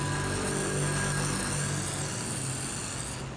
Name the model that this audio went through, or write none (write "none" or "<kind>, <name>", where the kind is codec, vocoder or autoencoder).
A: none